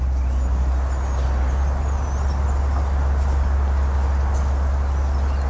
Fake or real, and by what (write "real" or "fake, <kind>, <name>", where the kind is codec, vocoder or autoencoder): real